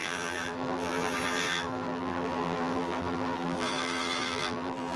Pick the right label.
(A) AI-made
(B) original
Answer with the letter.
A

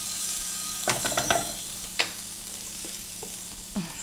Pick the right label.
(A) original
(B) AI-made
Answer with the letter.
B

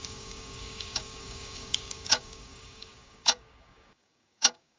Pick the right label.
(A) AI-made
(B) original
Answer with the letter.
A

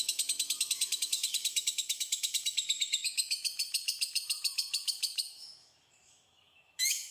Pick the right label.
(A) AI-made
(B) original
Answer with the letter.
A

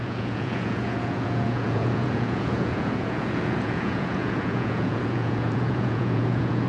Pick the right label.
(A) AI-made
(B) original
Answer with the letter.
A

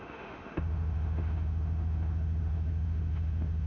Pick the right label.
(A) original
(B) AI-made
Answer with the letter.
B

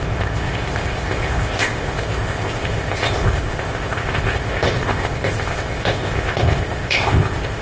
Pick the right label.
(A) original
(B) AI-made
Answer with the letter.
B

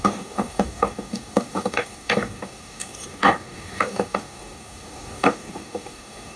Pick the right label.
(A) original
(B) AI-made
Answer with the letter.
B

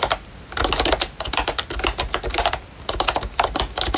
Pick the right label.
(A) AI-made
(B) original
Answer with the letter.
B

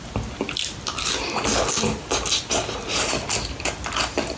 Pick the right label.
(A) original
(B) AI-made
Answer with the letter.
A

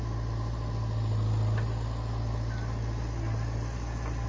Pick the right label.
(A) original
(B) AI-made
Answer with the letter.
A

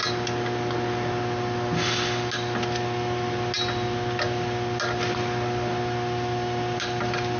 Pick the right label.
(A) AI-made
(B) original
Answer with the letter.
B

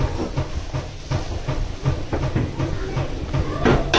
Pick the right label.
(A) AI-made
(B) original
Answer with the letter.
B